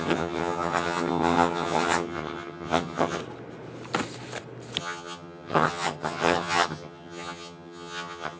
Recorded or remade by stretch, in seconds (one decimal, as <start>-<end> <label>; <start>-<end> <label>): 0.0-3.2 remade; 3.2-4.8 recorded; 4.8-8.4 remade